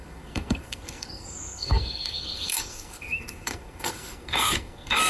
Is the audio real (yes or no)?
no